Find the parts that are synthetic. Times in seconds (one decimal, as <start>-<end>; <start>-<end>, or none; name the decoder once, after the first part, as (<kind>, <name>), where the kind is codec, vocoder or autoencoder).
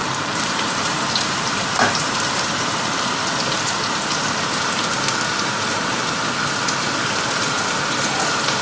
0.0-2.5 (vocoder, BigVGAN v2)